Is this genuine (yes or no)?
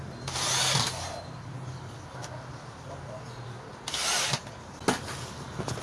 yes